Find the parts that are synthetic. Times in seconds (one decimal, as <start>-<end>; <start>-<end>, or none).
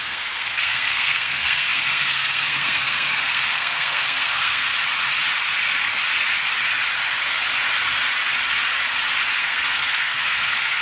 0.0-4.7; 9.4-10.8